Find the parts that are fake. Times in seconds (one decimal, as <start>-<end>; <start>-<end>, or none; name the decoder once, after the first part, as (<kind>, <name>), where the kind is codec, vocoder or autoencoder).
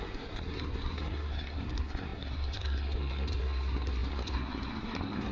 0.0-5.3 (codec, SNAC)